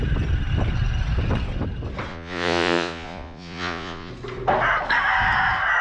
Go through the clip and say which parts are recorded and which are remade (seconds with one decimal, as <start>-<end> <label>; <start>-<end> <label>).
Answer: 0.0-2.1 recorded; 2.1-4.1 remade; 4.1-5.8 recorded